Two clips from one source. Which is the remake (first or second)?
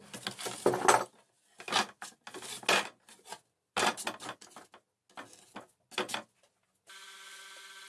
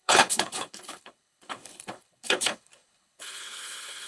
second